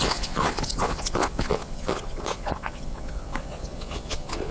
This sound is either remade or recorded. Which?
remade